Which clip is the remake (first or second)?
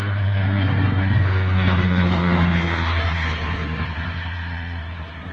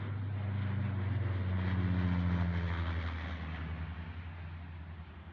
first